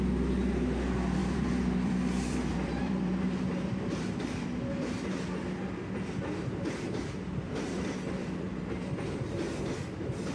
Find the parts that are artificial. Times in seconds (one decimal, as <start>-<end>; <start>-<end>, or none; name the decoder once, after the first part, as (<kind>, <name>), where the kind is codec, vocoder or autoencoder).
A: 1.2-3.7 (vocoder, BigVGAN v2); 8.2-9.6